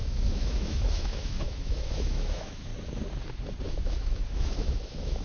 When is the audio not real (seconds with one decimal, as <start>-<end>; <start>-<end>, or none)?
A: 0.0-2.7; 3.7-5.2